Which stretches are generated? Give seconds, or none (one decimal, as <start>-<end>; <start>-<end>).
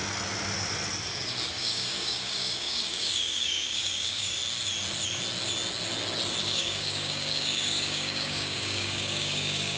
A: 1.5-4.4; 6.4-9.8